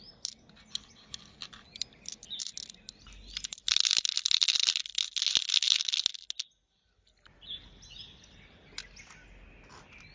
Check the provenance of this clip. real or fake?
real